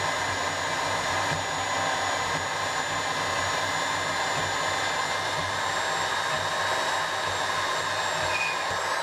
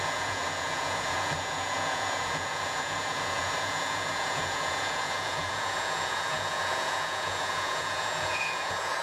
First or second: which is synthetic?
second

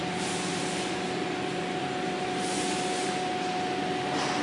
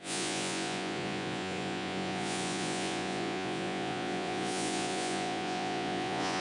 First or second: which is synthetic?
second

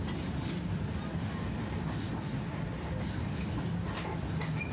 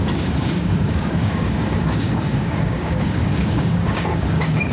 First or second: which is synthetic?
second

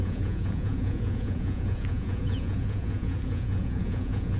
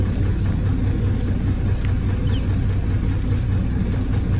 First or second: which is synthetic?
first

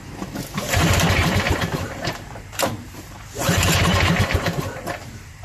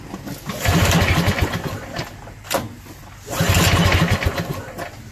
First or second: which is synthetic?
first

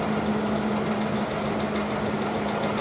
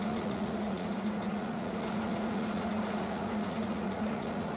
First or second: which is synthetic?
second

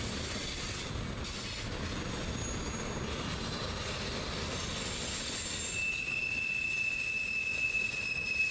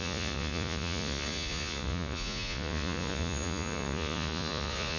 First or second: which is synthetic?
second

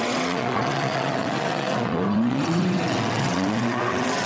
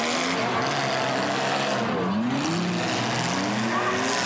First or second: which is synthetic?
first